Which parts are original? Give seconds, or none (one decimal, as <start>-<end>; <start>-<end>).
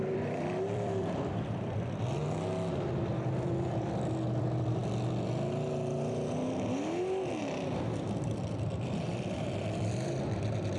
2.2-2.7; 4.8-7.4